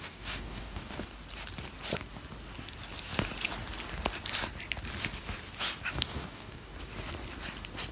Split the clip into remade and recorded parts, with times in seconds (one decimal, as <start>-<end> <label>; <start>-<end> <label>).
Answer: 0.0-1.2 remade; 1.2-5.9 recorded; 5.9-6.7 remade; 6.7-7.9 recorded